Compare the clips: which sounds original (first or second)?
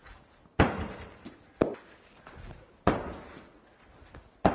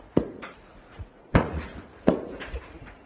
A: first